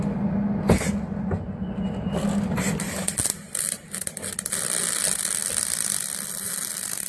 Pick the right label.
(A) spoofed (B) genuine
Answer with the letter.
B